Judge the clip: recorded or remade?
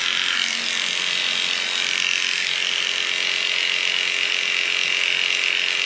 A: recorded